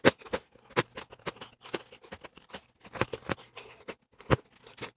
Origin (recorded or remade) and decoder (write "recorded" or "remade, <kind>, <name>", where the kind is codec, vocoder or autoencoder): recorded